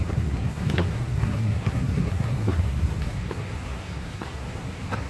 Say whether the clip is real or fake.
fake